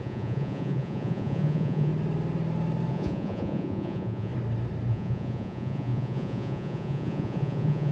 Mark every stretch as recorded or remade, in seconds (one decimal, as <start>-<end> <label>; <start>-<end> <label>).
0.0-1.9 remade; 1.9-2.9 recorded; 2.9-4.3 remade; 4.3-4.9 recorded; 4.9-7.9 remade